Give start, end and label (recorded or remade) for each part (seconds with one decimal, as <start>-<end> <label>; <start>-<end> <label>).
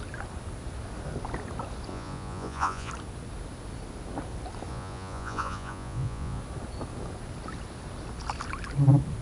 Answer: 0.0-1.9 recorded; 1.9-2.9 remade; 2.9-4.7 recorded; 4.7-6.4 remade; 6.4-9.2 recorded